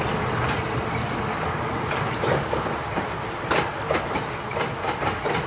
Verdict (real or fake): real